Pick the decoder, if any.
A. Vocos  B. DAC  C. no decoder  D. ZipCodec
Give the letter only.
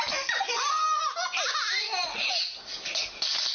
C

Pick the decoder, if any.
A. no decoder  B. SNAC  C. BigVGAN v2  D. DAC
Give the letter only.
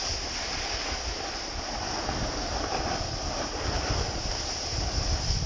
A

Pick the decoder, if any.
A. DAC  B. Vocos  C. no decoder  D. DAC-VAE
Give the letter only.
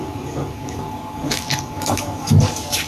A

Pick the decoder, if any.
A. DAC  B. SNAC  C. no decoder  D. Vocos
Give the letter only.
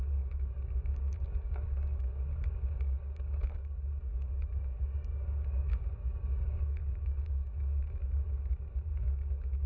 A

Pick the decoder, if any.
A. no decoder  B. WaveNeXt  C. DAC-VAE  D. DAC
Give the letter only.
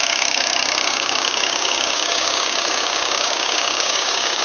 D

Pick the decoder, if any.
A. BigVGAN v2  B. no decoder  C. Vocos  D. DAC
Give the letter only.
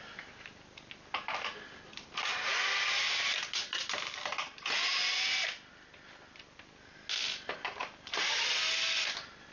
B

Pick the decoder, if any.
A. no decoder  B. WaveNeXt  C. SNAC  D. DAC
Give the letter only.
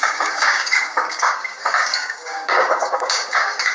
D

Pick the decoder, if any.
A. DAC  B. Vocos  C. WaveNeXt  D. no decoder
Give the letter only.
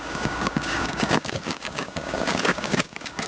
A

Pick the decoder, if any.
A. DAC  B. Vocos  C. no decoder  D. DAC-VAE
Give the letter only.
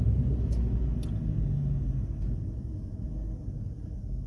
C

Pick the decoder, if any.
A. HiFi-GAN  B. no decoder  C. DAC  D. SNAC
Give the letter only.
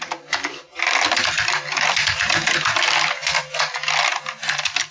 B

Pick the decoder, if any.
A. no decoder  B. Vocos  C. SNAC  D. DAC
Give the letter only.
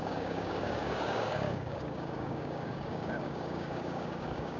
D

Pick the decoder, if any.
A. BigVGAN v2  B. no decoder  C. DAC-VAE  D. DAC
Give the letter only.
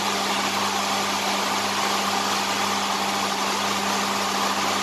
B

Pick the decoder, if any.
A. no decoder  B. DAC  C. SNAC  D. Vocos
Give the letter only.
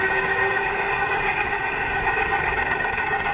B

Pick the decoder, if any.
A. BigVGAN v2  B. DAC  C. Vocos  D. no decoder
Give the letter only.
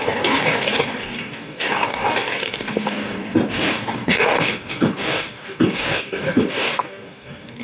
B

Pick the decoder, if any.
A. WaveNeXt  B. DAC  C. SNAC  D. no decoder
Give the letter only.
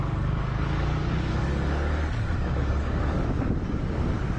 B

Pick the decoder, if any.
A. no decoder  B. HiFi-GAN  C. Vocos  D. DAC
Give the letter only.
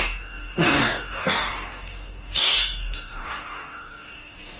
D